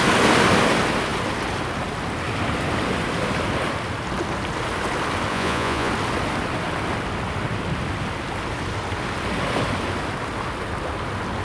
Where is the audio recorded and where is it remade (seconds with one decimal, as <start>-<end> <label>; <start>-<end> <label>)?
0.0-5.3 recorded; 5.3-5.9 remade; 5.9-11.4 recorded